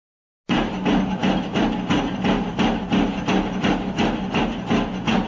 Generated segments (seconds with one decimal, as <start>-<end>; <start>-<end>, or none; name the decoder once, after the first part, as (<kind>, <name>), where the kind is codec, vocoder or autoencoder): none